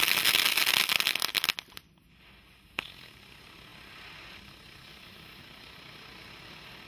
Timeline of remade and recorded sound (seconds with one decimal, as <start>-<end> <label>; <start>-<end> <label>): 0.0-6.9 recorded